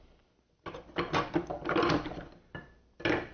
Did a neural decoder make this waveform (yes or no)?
no